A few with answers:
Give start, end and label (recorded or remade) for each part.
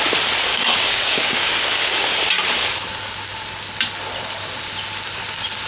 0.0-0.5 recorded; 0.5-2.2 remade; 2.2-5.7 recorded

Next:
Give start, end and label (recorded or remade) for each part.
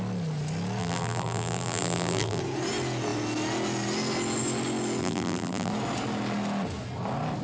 0.0-0.8 recorded; 0.8-2.4 remade; 2.4-5.0 recorded; 5.0-5.7 remade; 5.7-7.4 recorded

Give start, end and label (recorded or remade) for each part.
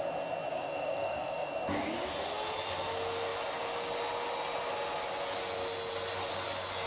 0.0-0.5 recorded; 0.5-1.5 remade; 1.5-6.9 recorded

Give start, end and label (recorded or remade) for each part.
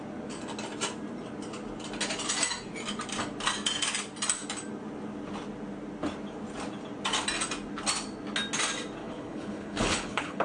0.0-9.0 recorded; 9.0-10.4 remade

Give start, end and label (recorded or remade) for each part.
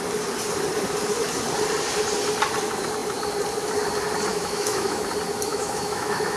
0.0-4.3 recorded; 4.3-5.0 remade; 5.0-5.5 recorded; 5.5-6.4 remade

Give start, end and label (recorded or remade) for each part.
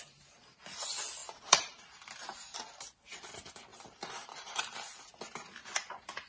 0.0-1.2 recorded; 1.2-1.8 remade; 1.8-3.7 recorded; 3.7-4.6 remade; 4.6-6.3 recorded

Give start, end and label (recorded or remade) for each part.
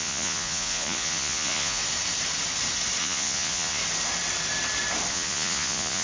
0.0-1.8 remade; 1.8-3.0 recorded; 3.0-3.8 remade; 3.8-5.1 recorded; 5.1-6.0 remade